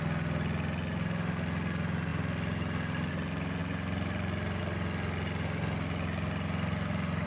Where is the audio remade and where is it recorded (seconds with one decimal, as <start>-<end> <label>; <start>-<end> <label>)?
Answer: 0.0-7.3 recorded